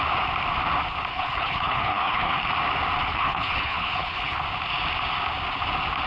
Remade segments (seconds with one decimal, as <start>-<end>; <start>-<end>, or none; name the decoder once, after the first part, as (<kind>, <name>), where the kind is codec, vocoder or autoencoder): 1.1-2.4 (codec, HILCodec); 3.0-4.4